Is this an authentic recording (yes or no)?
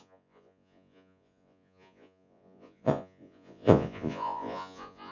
no